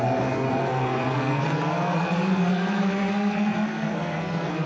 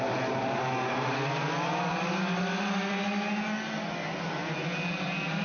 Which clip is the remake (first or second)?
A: first